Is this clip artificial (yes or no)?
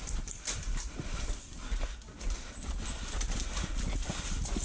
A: no